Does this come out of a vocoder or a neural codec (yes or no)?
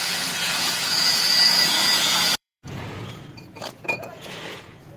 yes